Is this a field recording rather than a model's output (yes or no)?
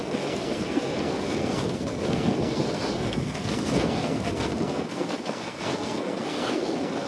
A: no